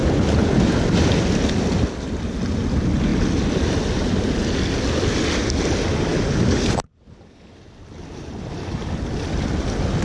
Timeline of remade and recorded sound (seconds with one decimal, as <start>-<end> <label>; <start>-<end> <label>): 0.0-10.0 recorded